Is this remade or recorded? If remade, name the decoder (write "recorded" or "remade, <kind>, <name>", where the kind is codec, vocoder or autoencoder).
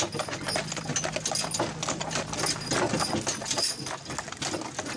recorded